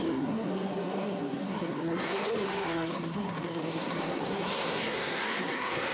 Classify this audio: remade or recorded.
remade